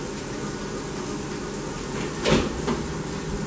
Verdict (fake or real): real